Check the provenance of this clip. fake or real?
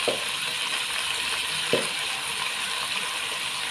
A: real